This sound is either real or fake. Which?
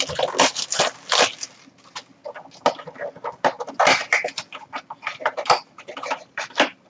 real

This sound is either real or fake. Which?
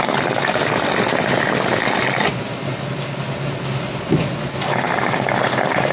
real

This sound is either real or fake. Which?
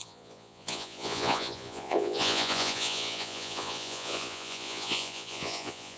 fake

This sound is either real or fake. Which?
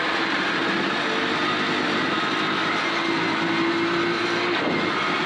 real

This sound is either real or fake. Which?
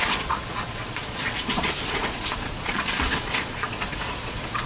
fake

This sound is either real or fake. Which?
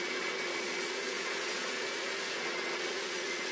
fake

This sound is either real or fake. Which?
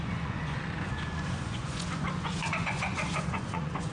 fake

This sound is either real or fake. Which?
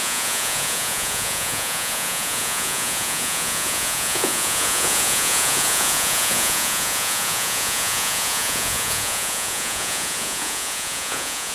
fake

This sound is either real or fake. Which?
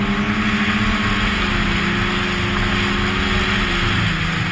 real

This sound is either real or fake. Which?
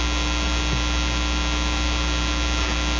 real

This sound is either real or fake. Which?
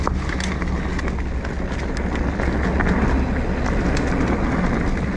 real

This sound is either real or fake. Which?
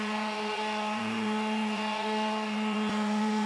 fake